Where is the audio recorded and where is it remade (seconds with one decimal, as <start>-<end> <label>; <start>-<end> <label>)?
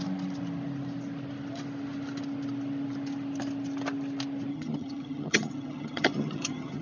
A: 0.0-4.5 recorded; 4.5-6.8 remade